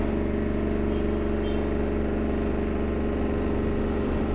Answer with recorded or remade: recorded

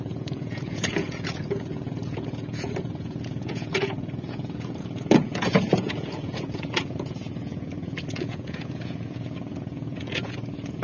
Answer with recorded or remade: remade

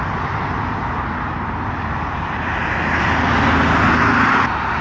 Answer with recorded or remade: recorded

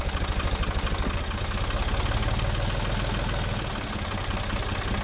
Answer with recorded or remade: recorded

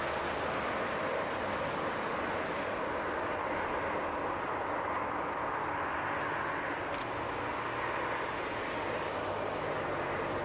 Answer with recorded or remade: recorded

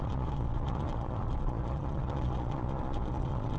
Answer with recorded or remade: remade